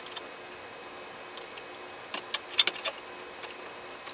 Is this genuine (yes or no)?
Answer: yes